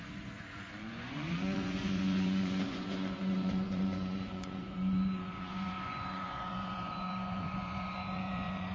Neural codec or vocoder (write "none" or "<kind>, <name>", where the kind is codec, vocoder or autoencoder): vocoder, Vocos